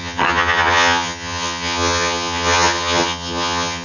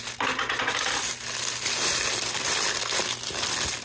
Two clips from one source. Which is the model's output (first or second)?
first